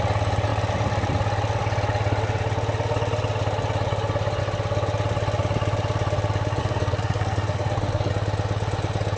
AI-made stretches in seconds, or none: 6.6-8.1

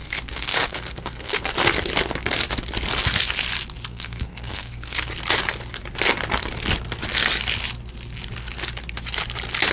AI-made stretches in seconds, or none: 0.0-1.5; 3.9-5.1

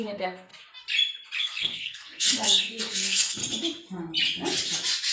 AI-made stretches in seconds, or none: 0.0-0.5; 1.4-3.4

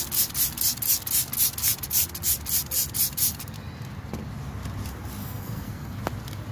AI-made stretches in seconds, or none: 5.2-6.0